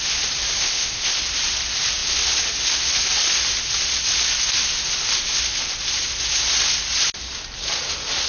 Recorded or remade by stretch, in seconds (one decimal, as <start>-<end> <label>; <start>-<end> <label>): 0.0-0.6 recorded; 0.6-1.2 remade; 1.2-8.3 recorded